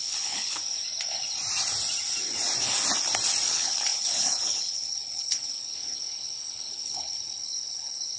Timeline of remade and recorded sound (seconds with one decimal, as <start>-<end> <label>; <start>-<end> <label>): 0.0-0.6 remade; 0.6-3.5 recorded; 3.5-8.2 remade